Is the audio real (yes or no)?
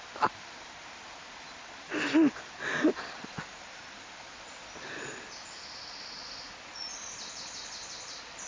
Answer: yes